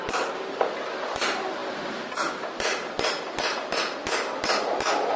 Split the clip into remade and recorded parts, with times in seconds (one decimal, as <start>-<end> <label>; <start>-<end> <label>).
0.0-5.2 recorded